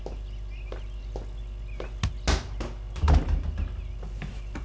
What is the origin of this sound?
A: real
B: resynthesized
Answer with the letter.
A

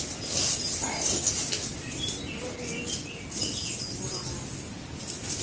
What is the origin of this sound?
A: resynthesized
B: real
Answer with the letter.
B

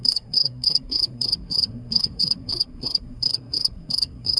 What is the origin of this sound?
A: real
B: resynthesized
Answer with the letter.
B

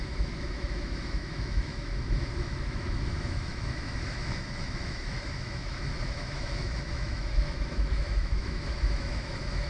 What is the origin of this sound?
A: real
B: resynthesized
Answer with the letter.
B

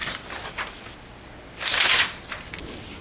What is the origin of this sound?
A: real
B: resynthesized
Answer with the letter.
A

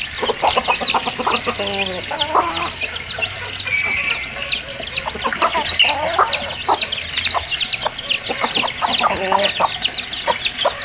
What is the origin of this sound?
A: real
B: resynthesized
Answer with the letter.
A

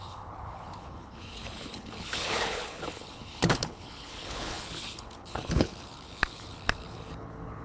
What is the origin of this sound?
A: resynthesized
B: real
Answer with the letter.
A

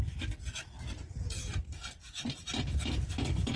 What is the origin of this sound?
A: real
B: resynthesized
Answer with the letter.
A